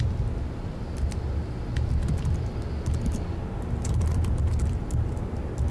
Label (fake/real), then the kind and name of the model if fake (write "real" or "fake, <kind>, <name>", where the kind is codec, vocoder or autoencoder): real